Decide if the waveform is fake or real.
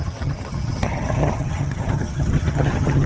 fake